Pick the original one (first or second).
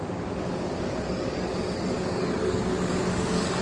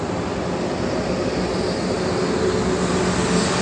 second